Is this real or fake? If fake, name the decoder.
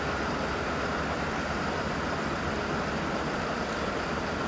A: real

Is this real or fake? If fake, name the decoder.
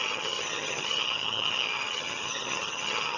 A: fake, vocoder, HiFi-GAN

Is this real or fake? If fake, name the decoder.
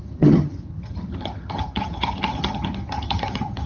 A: fake, vocoder, HiFi-GAN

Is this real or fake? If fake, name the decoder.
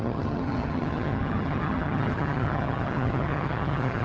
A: fake, vocoder, HiFi-GAN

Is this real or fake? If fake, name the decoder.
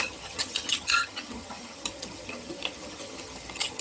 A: fake, vocoder, HiFi-GAN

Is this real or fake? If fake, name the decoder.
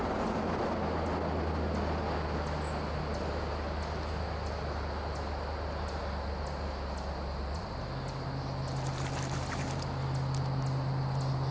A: real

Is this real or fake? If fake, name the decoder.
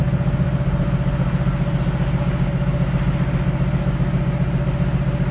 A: real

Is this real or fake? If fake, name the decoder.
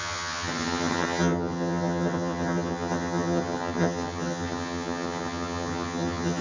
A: fake, vocoder, HiFi-GAN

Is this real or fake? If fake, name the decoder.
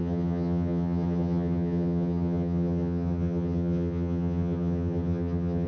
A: fake, vocoder, HiFi-GAN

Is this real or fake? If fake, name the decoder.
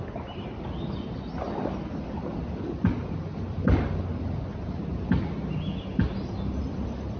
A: real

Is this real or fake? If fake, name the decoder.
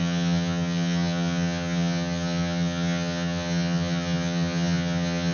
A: fake, vocoder, HiFi-GAN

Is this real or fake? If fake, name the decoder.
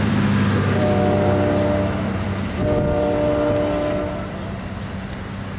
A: real